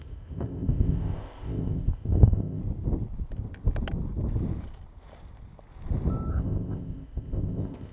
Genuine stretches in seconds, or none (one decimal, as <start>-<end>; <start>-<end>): 2.6-6.3

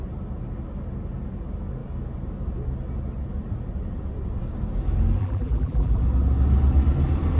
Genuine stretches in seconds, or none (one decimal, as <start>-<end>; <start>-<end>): 0.0-5.2; 6.0-7.4

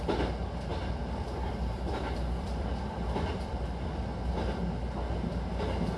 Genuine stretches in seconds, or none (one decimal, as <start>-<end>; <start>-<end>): 0.0-0.7; 4.3-6.0